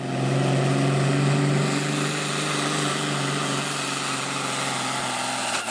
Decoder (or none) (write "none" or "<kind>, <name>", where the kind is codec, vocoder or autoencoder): none